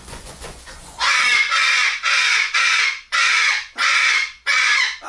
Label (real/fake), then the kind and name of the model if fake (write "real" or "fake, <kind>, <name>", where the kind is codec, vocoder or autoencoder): fake, vocoder, Vocos